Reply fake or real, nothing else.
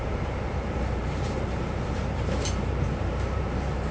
fake